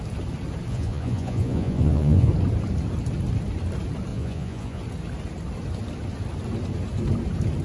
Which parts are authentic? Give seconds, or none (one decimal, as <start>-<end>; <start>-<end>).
0.0-0.7; 2.3-4.1; 4.8-7.6